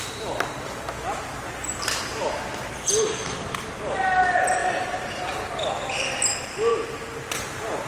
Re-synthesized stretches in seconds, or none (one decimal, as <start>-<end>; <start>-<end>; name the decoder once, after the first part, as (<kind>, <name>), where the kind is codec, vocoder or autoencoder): 4.6-6.1 (vocoder, BigVGAN v2); 6.7-7.3